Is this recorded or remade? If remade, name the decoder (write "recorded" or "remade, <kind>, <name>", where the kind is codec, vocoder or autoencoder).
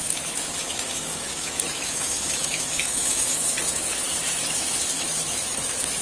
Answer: remade, autoencoder, DAC-VAE